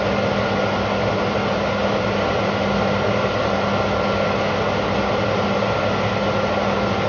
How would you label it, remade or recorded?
recorded